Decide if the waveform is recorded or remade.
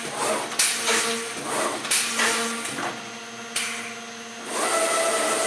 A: recorded